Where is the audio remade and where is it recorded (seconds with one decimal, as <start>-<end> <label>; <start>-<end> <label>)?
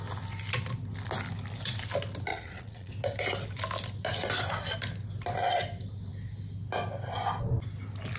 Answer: 0.0-2.3 recorded; 2.3-2.9 remade; 2.9-8.2 recorded